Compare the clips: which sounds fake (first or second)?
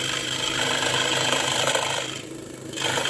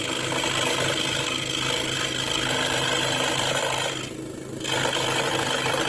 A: first